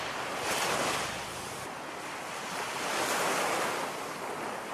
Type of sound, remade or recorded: recorded